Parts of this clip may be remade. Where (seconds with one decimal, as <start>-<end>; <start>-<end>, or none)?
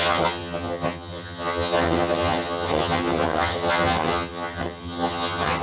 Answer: 0.0-5.6